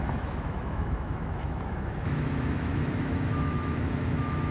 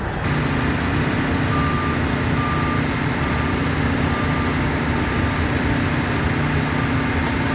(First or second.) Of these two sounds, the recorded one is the second